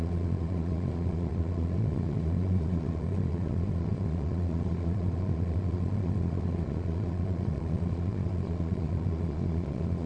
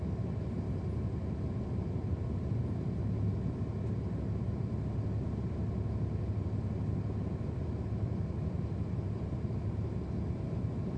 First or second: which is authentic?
second